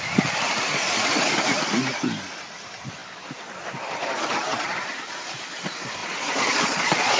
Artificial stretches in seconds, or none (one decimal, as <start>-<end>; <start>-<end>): 6.0-7.2